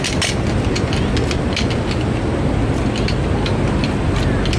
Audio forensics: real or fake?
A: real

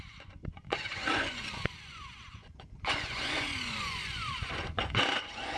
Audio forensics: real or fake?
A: fake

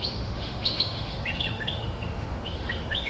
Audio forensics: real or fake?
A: fake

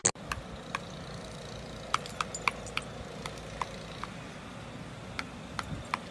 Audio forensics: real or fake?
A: real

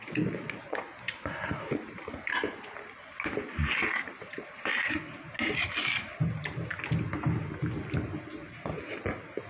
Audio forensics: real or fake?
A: real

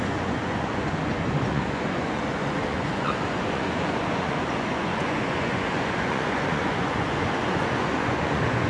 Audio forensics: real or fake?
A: fake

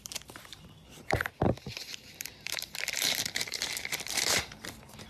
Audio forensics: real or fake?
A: fake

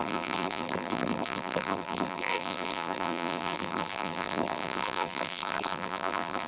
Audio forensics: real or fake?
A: fake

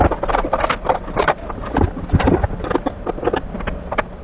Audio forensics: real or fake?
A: real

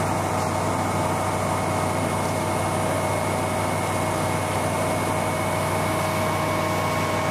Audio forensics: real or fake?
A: real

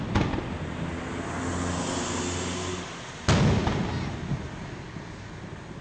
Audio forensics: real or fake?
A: real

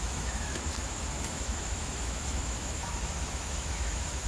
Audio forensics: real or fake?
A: fake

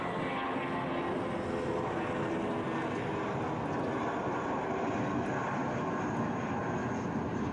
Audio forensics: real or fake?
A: real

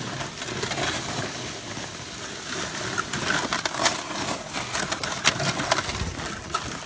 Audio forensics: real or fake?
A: real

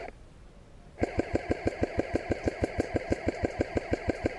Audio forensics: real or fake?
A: real